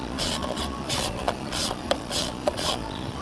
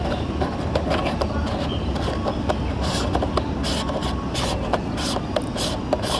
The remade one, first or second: first